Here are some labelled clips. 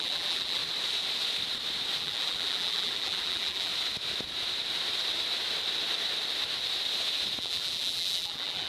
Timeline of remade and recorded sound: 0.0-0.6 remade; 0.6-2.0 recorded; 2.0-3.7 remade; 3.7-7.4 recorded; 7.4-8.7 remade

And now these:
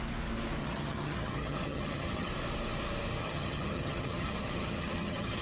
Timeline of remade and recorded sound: 0.0-0.6 recorded; 0.6-2.3 remade; 2.3-3.2 recorded; 3.2-5.4 remade

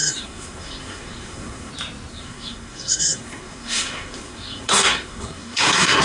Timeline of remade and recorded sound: 0.0-1.7 remade; 1.7-2.1 recorded; 2.1-6.0 remade

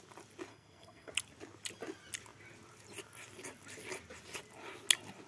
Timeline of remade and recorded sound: 0.0-0.5 recorded; 0.5-1.1 remade; 1.1-5.3 recorded

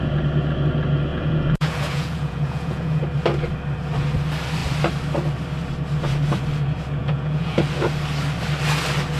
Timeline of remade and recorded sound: 0.0-1.1 recorded; 1.1-3.0 remade; 3.0-7.0 recorded; 7.0-7.6 remade; 7.6-9.2 recorded